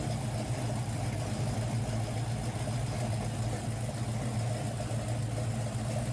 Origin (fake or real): real